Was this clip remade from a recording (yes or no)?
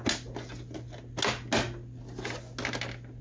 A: no